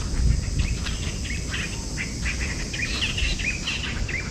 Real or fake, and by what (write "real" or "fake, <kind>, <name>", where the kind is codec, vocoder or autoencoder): real